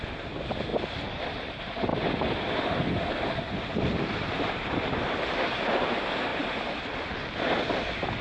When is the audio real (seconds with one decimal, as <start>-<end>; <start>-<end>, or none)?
0.0-0.7; 1.2-1.9; 5.3-6.3; 6.8-8.2